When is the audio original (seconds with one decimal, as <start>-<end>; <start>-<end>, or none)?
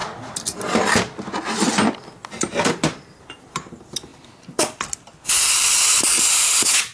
0.0-2.7